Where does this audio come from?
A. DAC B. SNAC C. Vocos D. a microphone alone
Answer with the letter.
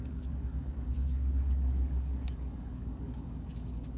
A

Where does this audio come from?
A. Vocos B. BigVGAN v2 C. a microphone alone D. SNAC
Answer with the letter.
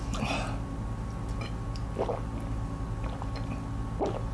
C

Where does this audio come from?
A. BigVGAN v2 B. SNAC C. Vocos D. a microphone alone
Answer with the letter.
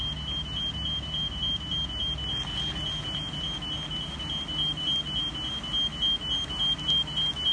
D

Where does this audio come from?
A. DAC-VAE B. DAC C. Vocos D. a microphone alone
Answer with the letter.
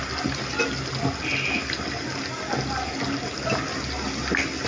D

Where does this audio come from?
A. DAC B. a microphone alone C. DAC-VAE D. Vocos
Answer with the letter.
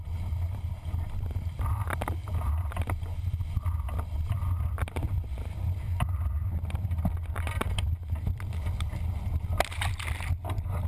B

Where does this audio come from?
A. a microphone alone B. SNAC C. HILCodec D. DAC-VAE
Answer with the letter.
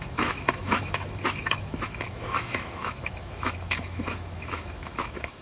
D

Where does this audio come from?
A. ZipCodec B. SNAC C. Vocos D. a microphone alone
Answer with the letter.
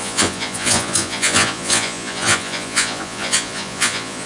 C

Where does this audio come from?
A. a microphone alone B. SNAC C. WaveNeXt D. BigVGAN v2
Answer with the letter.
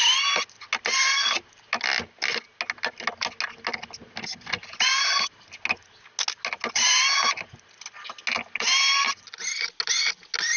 A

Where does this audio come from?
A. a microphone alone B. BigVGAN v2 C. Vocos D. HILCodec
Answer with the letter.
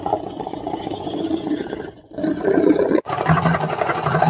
C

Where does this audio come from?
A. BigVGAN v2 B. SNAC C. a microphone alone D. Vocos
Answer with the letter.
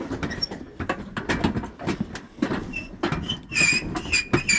C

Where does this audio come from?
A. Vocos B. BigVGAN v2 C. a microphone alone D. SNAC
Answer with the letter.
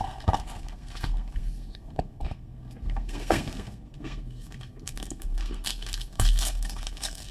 D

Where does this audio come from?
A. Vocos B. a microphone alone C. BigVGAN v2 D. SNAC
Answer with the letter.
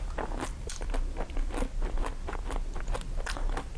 B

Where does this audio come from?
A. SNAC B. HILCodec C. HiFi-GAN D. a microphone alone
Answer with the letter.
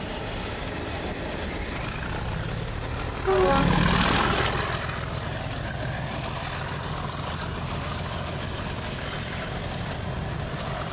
D